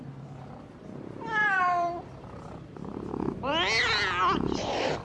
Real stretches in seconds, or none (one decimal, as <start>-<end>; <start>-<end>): 0.0-1.4; 3.1-5.0